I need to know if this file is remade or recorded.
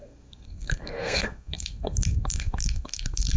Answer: remade